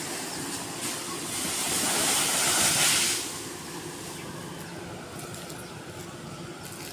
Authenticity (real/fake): real